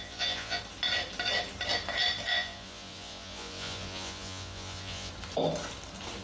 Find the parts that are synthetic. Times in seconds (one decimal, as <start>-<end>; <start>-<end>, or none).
0.0-0.6; 2.3-5.1